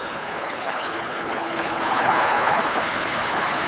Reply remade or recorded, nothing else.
remade